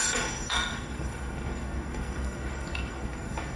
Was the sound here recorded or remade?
remade